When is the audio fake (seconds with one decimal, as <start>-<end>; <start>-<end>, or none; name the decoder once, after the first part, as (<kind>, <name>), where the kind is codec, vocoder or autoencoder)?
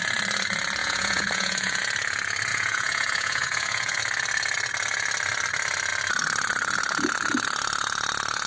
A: 0.8-1.8 (vocoder, Vocos); 2.5-4.0